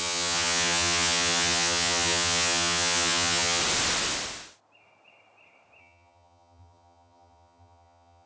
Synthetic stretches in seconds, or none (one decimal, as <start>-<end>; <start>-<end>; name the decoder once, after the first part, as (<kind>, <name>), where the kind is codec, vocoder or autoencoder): 0.0-3.6 (vocoder, HiFi-GAN); 5.8-8.3